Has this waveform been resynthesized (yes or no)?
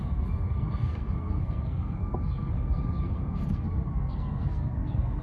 yes